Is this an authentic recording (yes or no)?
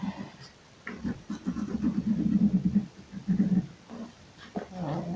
yes